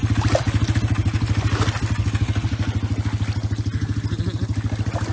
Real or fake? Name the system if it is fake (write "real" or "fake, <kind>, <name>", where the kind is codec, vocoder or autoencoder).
real